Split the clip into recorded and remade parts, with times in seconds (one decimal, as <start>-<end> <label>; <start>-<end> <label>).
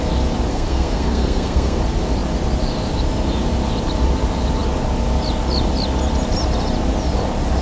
0.0-0.5 recorded; 0.5-1.8 remade; 1.8-7.6 recorded